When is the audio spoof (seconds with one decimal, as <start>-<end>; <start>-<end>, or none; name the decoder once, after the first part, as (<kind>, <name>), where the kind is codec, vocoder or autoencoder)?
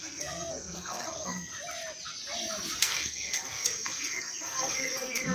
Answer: 0.0-1.5 (codec, SNAC); 2.8-5.3